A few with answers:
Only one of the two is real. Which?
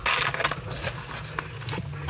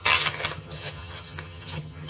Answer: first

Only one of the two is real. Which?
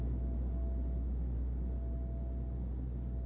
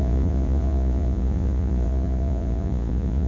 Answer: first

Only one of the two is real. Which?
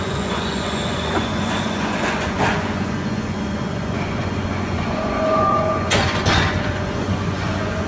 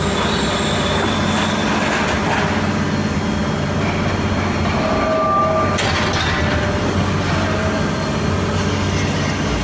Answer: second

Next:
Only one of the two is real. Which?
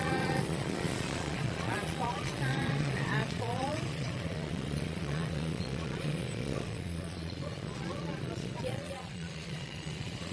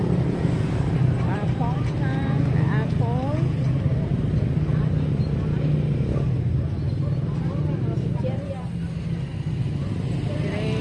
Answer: second